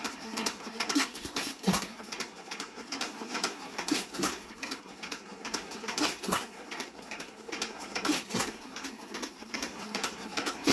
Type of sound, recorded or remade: remade